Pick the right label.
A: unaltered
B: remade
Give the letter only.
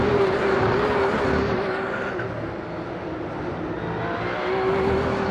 A